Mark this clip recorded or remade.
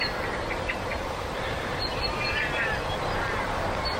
remade